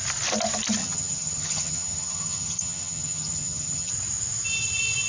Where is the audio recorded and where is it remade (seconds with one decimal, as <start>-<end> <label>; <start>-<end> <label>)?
0.0-0.8 recorded; 0.8-3.9 remade; 3.9-5.1 recorded